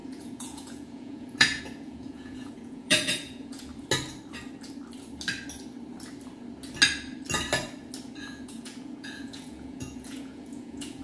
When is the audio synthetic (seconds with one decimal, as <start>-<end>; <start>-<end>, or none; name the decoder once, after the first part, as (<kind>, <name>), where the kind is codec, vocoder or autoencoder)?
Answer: 0.0-3.7 (vocoder, Vocos); 8.2-11.0